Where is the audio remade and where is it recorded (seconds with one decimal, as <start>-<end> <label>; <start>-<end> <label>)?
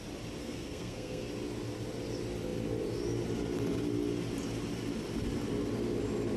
0.0-0.4 recorded; 0.4-1.2 remade; 1.2-6.4 recorded